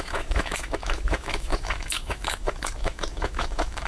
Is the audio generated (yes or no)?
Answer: yes